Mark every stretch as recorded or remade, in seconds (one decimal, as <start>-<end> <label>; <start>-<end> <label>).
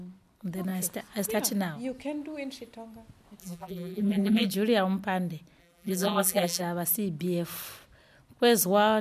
0.0-3.4 recorded; 3.4-4.5 remade; 4.5-5.6 recorded; 5.6-6.6 remade; 6.6-9.0 recorded